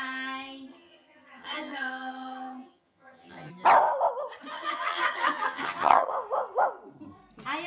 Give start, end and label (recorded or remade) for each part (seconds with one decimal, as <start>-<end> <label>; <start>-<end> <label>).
0.0-0.7 recorded; 0.7-3.5 remade; 3.5-4.5 recorded; 4.5-6.1 remade; 6.1-7.7 recorded